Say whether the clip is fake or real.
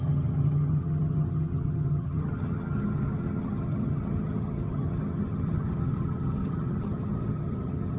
fake